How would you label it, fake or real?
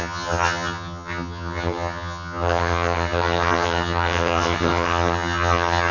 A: fake